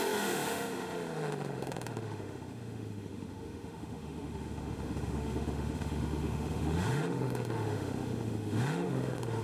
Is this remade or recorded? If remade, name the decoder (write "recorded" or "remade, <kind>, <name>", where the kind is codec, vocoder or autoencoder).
remade, autoencoder, DAC-VAE